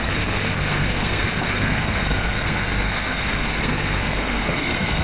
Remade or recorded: remade